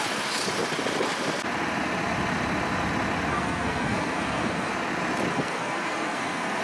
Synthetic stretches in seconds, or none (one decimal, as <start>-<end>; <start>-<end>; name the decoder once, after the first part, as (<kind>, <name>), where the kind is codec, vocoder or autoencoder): 3.3-4.7 (codec, SNAC); 5.3-6.6